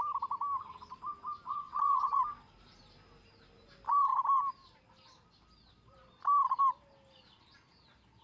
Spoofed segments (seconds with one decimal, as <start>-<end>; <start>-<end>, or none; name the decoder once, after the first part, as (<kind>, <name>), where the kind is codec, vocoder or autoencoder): 1.5-2.2 (vocoder, WaveNeXt)